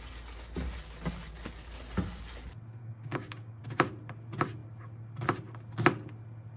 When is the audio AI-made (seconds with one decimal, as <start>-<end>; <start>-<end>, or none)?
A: 2.8-3.6